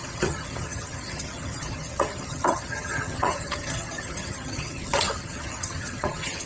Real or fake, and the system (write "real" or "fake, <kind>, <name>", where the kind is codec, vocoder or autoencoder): fake, vocoder, HiFi-GAN